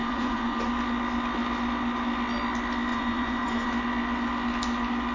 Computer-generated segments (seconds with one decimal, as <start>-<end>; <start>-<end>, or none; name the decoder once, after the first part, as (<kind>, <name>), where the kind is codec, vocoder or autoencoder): 0.0-0.7 (vocoder, Vocos); 2.9-3.7